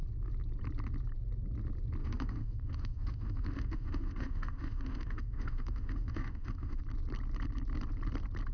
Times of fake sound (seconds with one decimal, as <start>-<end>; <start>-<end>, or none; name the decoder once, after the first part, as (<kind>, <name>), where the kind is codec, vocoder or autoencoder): 2.0-6.8 (autoencoder, DAC-VAE)